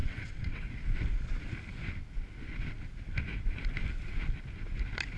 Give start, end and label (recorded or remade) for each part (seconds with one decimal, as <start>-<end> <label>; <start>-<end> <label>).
0.0-0.6 remade; 0.6-5.2 recorded